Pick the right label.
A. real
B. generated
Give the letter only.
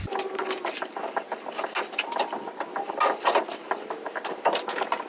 A